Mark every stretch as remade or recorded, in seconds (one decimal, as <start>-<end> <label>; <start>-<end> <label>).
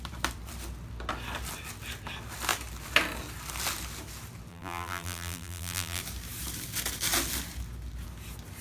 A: 0.0-4.5 recorded; 4.5-6.0 remade; 6.0-8.6 recorded